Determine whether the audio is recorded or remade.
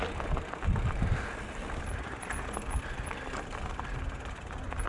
remade